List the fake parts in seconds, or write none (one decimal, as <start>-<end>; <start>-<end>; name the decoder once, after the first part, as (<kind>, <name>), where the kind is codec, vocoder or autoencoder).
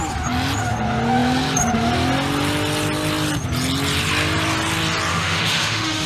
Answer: 5.1-6.1 (autoencoder, DAC-VAE)